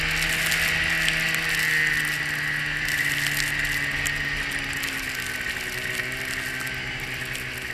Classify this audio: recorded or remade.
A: recorded